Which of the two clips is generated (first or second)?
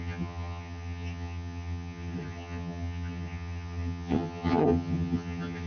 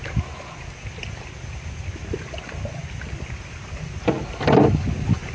first